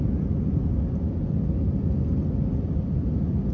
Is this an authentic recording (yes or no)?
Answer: yes